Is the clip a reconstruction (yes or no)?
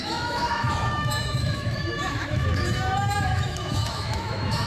yes